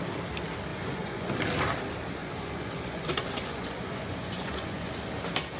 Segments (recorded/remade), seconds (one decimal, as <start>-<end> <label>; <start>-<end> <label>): 0.0-0.7 recorded; 0.7-1.3 remade; 1.3-2.2 recorded; 2.2-4.9 remade; 4.9-5.6 recorded